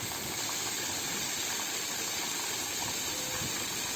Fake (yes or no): no